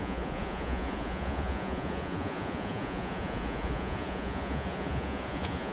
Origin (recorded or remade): remade